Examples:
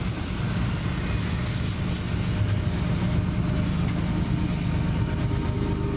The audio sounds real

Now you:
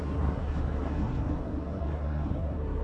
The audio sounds fake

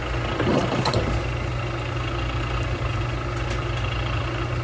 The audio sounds real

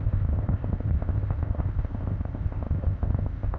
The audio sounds fake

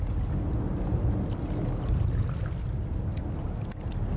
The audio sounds real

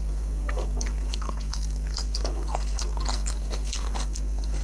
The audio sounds fake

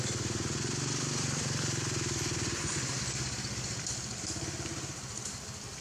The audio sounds fake